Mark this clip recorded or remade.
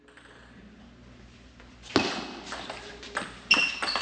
recorded